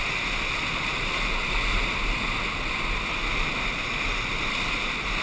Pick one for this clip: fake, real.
real